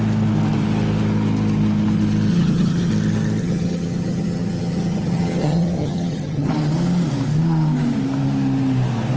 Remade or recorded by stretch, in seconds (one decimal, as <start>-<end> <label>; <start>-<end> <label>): 0.0-2.3 recorded; 2.3-2.9 remade; 2.9-3.4 recorded; 3.4-6.5 remade; 6.5-9.2 recorded